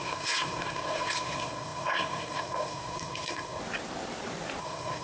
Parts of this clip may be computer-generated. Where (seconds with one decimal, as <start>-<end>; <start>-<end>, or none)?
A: 0.0-3.6; 4.6-5.0